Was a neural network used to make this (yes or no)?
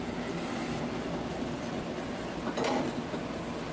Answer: no